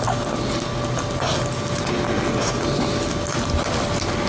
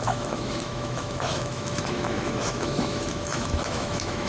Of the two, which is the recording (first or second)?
first